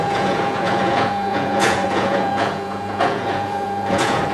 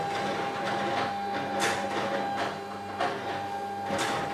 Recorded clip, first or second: second